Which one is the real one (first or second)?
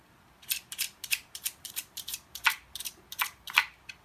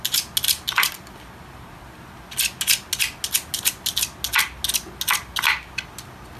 second